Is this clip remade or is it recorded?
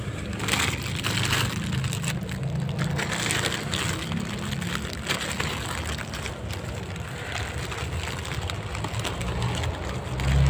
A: recorded